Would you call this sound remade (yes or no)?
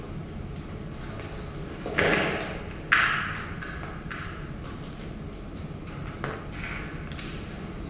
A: no